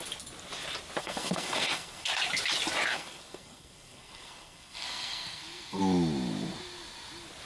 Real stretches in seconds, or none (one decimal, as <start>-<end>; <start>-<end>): 0.0-1.0; 2.1-2.9; 5.8-7.5

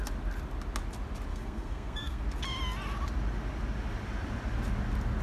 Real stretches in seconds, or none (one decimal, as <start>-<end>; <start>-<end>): 0.0-1.3; 2.2-5.2

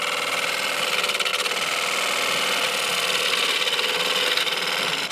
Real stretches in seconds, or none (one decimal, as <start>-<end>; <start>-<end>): 0.0-5.1

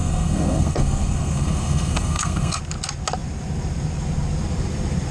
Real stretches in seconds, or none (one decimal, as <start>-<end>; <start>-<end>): 2.6-5.1

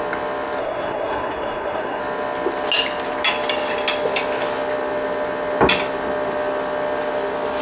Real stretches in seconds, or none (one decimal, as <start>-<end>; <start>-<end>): 0.0-0.6; 2.0-7.6

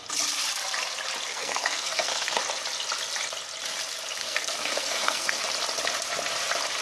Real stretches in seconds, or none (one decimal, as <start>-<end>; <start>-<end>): 0.0-1.3; 2.4-4.2; 5.4-6.8

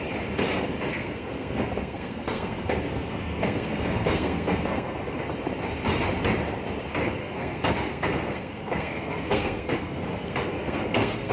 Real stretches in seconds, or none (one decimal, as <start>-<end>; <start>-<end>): 0.0-0.9; 5.2-7.2

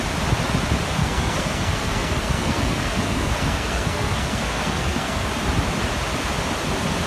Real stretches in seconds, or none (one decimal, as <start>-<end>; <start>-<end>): 0.0-1.0; 5.3-7.1